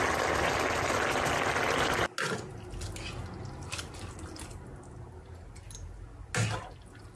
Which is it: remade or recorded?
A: recorded